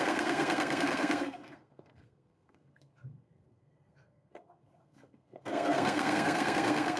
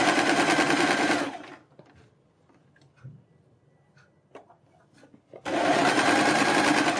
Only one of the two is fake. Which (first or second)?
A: first